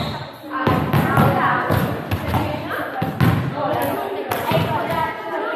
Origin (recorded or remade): recorded